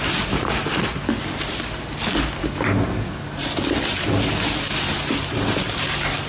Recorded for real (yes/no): yes